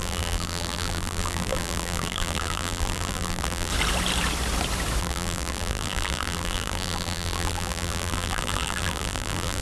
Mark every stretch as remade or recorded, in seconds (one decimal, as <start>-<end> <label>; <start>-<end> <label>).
0.0-3.7 remade; 3.7-5.0 recorded; 5.0-9.6 remade